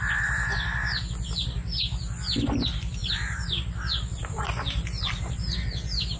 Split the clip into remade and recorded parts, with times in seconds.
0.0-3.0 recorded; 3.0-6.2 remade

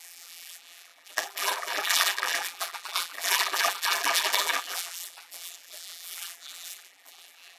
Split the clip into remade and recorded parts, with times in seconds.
0.0-7.6 remade

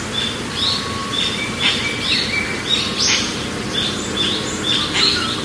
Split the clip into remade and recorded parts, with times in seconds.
0.0-1.0 recorded; 1.0-3.9 remade; 3.9-5.4 recorded

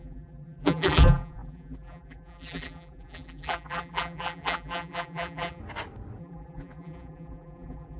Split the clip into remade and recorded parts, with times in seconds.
0.0-5.6 remade; 5.6-6.2 recorded; 6.2-8.0 remade

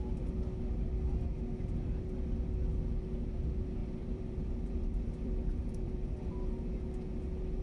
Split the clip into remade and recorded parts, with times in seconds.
0.0-3.8 recorded; 3.8-6.3 remade; 6.3-7.6 recorded

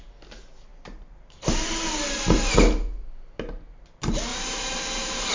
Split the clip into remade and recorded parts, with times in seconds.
0.0-0.7 recorded; 0.7-2.5 remade; 2.5-4.3 recorded; 4.3-5.3 remade